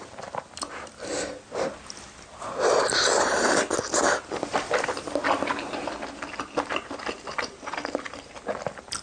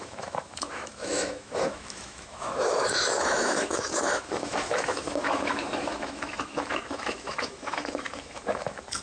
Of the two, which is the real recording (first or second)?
first